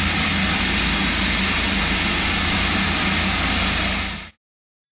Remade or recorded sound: recorded